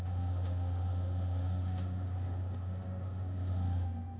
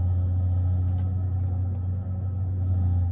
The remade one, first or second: first